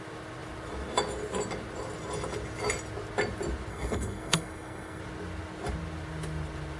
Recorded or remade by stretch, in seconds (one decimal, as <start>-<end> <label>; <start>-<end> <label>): 0.0-3.7 recorded; 3.7-5.0 remade; 5.0-6.8 recorded